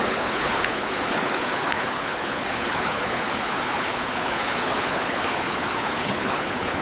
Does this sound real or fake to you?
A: fake